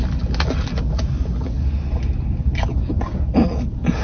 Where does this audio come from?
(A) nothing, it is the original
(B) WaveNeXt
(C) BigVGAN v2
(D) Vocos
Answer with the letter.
A